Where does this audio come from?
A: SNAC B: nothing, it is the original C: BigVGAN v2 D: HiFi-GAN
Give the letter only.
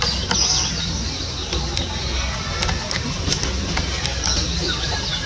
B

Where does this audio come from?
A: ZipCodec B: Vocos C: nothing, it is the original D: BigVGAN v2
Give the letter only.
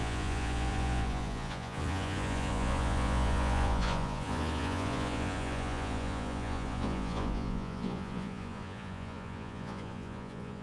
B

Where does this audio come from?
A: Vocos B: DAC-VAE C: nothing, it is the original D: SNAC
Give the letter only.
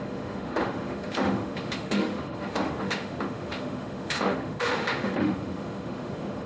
B